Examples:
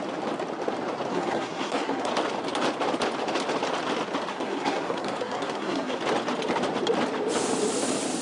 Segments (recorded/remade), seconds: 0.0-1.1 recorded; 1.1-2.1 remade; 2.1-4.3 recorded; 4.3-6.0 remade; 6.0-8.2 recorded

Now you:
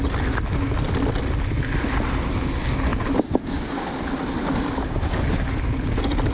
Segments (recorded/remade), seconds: 0.0-6.3 recorded

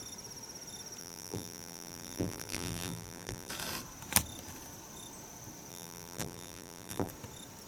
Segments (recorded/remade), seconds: 0.0-1.0 recorded; 1.0-3.5 remade; 3.5-5.7 recorded; 5.7-7.1 remade; 7.1-7.7 recorded

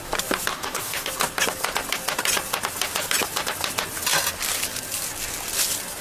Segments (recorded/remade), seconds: 0.0-0.5 recorded; 0.5-1.1 remade; 1.1-6.0 recorded

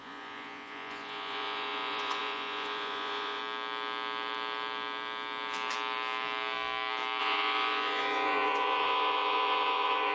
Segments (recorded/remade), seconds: 0.0-3.4 remade; 3.4-7.2 recorded; 7.2-10.1 remade

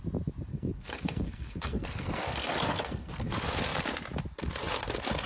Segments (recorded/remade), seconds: 0.0-0.5 recorded; 0.5-3.3 remade; 3.3-5.3 recorded